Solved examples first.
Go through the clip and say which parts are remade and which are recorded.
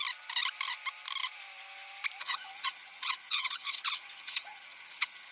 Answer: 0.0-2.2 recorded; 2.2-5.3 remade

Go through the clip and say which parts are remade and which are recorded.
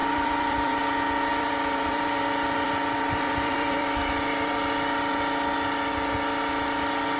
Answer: 0.0-0.8 remade; 0.8-1.3 recorded; 1.3-5.2 remade; 5.2-7.2 recorded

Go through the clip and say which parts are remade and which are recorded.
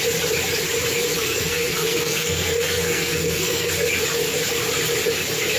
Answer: 0.0-1.1 recorded; 1.1-3.7 remade; 3.7-5.6 recorded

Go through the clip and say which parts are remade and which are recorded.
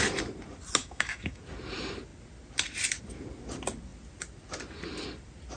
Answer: 0.0-0.8 recorded; 0.8-1.4 remade; 1.4-5.6 recorded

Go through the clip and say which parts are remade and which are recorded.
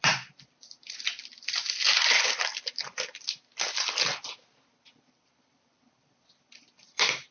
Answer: 0.0-2.5 remade; 2.5-5.1 recorded; 5.1-7.3 remade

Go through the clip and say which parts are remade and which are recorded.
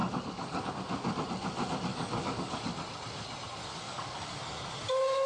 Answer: 0.0-0.7 remade; 0.7-1.9 recorded; 1.9-2.6 remade; 2.6-3.7 recorded; 3.7-4.4 remade; 4.4-5.3 recorded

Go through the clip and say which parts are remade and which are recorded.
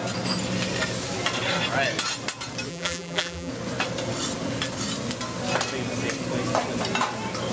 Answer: 0.0-2.7 recorded; 2.7-3.5 remade; 3.5-7.5 recorded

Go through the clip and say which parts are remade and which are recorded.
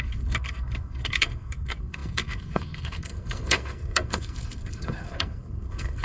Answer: 0.0-6.0 remade